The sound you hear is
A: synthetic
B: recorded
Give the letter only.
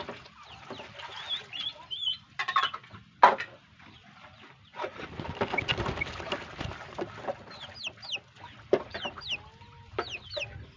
B